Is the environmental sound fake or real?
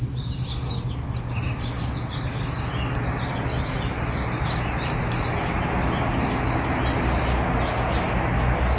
real